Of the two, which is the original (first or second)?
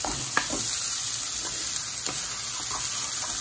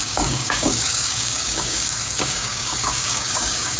first